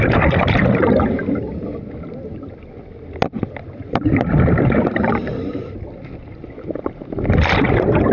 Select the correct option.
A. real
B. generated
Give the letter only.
A